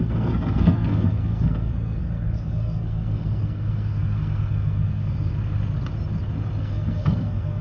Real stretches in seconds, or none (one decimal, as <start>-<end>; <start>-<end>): 5.3-6.6